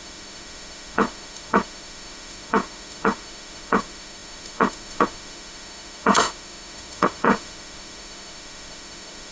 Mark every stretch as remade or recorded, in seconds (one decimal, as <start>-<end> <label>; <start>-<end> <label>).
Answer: 0.0-9.3 remade